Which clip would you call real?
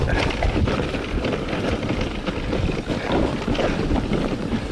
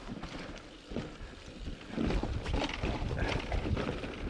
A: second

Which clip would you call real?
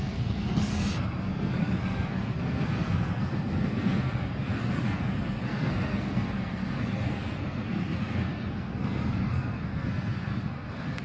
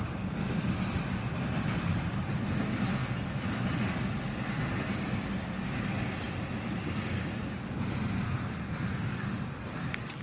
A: second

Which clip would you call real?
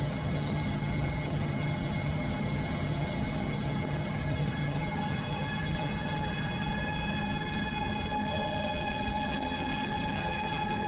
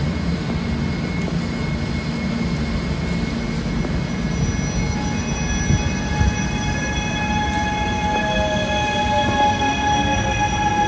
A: second